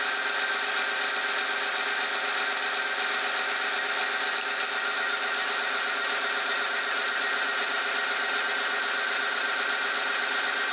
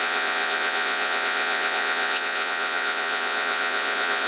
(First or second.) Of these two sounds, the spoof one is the second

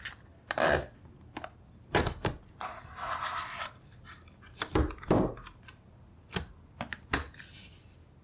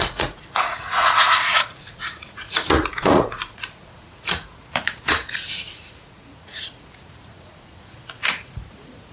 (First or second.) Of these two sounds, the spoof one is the second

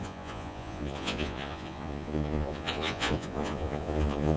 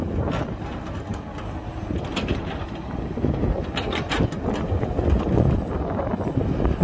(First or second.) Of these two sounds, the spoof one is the first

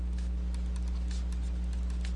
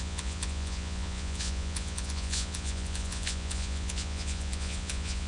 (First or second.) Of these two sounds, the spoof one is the second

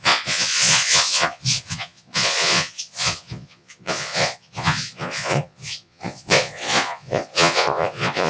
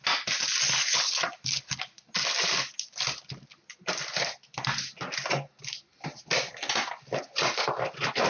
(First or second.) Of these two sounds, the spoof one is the first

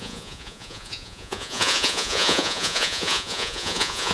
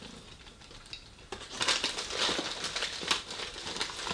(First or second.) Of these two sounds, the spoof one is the first